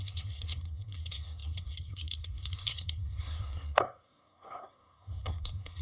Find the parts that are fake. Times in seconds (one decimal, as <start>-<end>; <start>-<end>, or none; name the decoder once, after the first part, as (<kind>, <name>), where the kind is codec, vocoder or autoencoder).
0.0-5.8 (codec, SNAC)

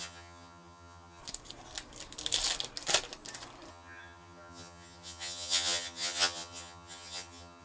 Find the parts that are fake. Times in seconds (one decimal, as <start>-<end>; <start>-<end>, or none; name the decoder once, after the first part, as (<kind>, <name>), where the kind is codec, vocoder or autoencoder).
0.0-1.2 (vocoder, HiFi-GAN); 3.7-7.6